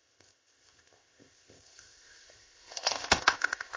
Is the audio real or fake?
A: fake